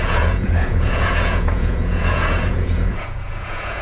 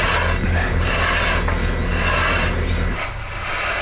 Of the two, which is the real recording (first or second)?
second